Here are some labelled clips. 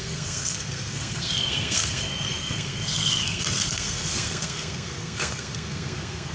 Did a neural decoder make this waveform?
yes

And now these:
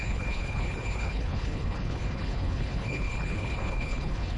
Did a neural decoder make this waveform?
yes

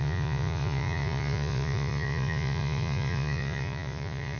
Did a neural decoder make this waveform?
yes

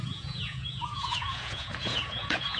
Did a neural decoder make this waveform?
yes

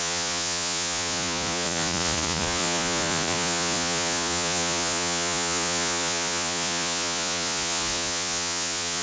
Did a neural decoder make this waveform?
yes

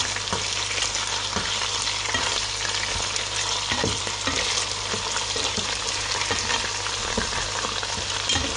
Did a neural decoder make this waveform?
no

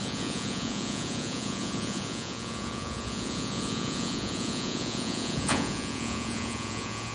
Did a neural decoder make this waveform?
yes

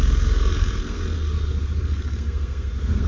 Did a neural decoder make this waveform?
yes